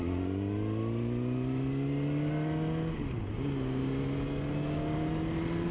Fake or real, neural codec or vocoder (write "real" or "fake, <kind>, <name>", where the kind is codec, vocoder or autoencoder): real